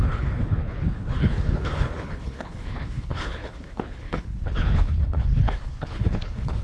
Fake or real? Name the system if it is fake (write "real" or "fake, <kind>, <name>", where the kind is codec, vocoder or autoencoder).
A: fake, codec, HILCodec